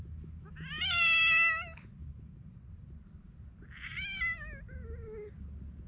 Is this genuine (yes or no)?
yes